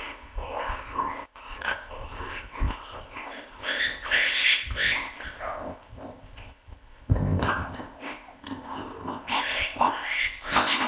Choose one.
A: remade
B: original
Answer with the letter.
A